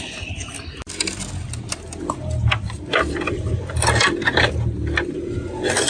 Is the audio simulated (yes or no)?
no